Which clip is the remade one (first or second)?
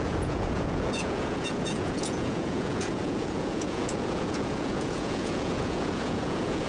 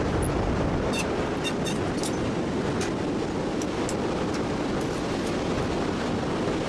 first